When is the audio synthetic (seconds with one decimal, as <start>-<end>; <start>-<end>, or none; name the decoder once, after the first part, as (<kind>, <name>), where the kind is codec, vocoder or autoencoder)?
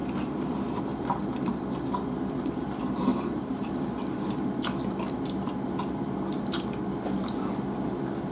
3.1-3.7 (vocoder, BigVGAN v2)